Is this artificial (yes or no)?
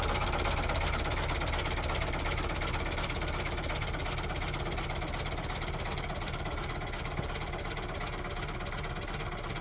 no